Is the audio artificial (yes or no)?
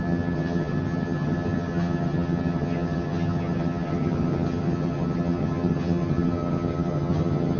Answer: yes